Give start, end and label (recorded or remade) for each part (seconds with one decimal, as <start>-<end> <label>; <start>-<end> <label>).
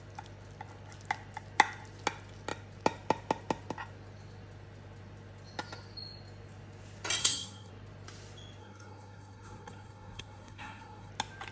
0.0-7.2 recorded; 7.2-7.7 remade; 7.7-8.6 recorded; 8.6-11.1 remade; 11.1-11.5 recorded